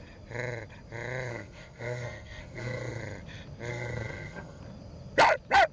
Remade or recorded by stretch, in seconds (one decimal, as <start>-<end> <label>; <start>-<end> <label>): 0.0-1.3 recorded; 1.3-3.0 remade; 3.0-3.7 recorded; 3.7-4.6 remade; 4.6-5.7 recorded